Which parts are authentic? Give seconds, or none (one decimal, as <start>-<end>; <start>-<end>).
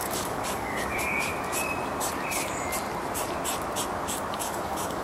1.3-4.3